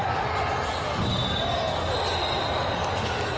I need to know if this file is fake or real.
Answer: real